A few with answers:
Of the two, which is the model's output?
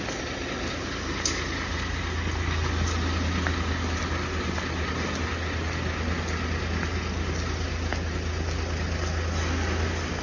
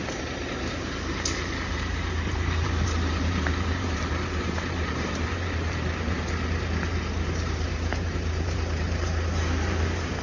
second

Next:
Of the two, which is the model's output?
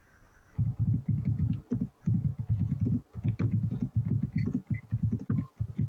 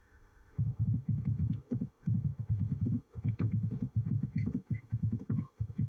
second